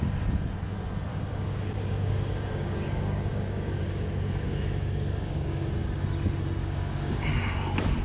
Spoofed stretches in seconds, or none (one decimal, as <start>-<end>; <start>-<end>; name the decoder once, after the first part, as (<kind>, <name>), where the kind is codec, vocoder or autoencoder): 1.1-5.7 (codec, DAC); 6.6-7.2